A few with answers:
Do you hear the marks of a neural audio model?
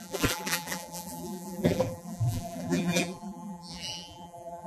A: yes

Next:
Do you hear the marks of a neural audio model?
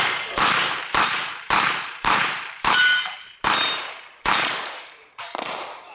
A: yes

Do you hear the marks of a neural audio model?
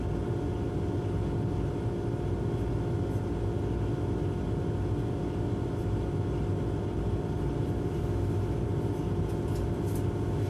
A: no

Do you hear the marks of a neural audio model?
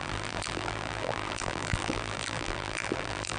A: yes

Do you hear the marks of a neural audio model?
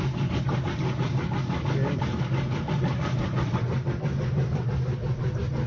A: yes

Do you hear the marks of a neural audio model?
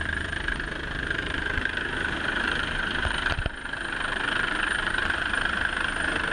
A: yes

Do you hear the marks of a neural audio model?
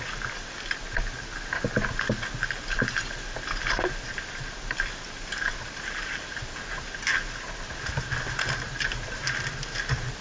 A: no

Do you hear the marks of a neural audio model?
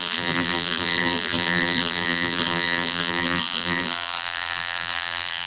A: yes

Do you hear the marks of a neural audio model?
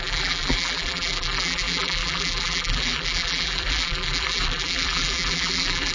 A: yes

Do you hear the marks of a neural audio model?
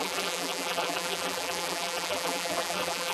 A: yes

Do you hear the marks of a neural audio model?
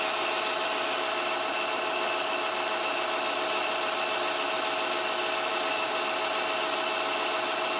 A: no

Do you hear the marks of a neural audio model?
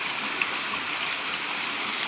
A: no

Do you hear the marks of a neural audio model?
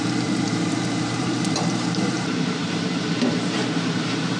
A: yes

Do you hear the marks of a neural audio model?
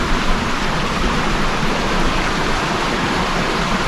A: yes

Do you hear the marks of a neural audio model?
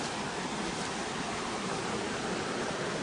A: yes